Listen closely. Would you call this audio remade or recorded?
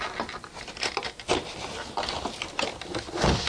recorded